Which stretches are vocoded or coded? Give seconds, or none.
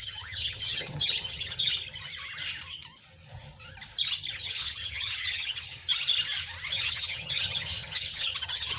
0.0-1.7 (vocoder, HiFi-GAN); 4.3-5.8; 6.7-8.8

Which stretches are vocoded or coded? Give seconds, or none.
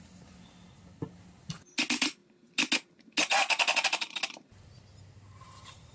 none